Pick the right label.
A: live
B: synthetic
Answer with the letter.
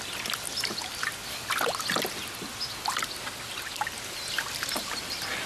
A